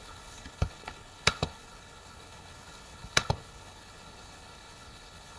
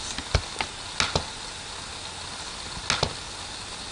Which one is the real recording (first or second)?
second